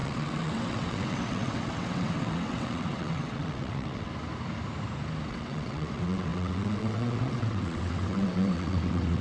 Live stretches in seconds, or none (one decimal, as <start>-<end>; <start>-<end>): 4.1-5.3